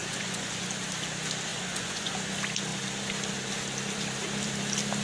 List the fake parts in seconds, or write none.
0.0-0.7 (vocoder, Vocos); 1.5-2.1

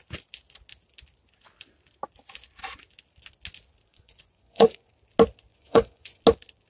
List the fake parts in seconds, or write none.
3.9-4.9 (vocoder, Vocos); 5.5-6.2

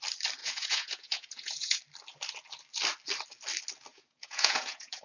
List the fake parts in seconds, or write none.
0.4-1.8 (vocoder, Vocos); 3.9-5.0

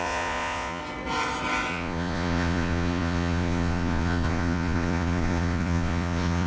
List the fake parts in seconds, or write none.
0.0-0.8 (vocoder, Vocos); 1.7-6.5

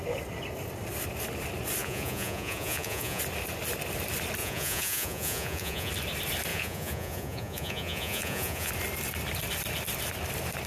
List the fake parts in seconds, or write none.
1.8-3.2 (vocoder, Vocos); 4.4-5.9; 6.5-8.7